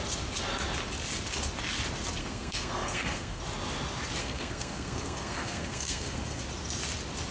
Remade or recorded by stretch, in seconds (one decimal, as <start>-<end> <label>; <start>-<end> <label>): 0.0-2.2 recorded; 2.2-3.4 remade; 3.4-4.2 recorded; 4.2-6.4 remade; 6.4-7.3 recorded